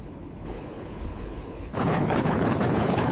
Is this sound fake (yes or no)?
yes